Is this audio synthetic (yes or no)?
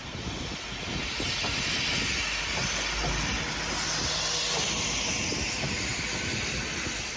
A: no